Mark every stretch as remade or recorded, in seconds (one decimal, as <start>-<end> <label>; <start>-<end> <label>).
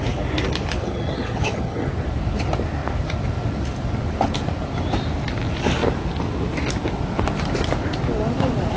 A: 0.0-0.8 recorded; 0.8-1.9 remade; 1.9-8.8 recorded